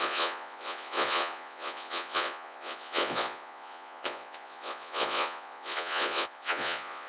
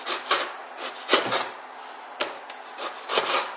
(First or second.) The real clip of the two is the second